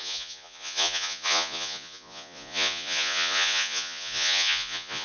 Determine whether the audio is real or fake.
fake